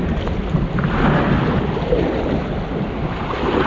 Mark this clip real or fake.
real